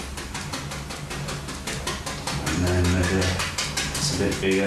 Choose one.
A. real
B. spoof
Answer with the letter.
A